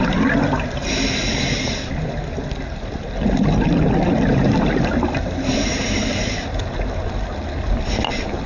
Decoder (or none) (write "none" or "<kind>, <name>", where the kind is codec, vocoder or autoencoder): none